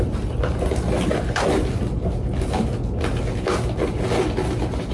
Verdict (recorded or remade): recorded